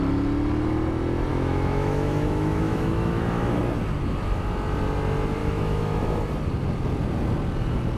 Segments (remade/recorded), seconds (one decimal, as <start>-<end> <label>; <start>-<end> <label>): 0.0-1.3 recorded; 1.3-3.6 remade; 3.6-5.4 recorded; 5.4-6.0 remade; 6.0-8.0 recorded